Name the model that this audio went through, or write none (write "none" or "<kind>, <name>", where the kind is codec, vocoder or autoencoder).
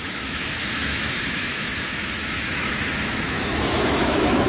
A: autoencoder, DAC-VAE